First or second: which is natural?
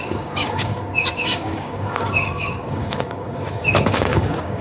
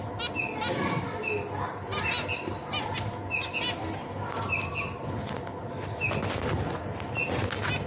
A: second